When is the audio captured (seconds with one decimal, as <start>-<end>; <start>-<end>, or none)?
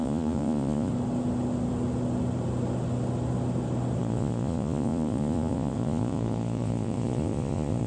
0.9-4.0